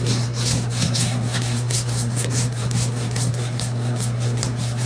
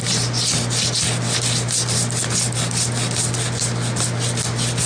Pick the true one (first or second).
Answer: second